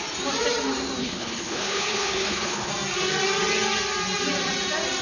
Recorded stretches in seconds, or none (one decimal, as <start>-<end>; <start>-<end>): 0.0-1.0; 2.7-5.0